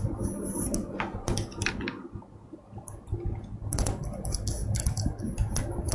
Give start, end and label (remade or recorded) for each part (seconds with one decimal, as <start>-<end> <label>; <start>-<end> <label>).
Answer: 0.0-5.9 recorded